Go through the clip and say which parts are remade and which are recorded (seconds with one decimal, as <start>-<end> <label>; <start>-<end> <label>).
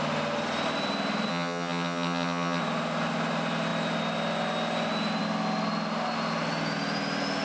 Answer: 0.0-1.3 recorded; 1.3-2.6 remade; 2.6-7.4 recorded